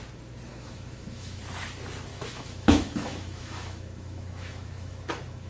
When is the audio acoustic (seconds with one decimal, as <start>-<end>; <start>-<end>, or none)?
0.0-0.5; 1.4-2.1